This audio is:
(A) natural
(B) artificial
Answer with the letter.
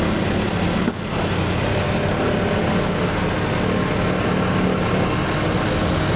A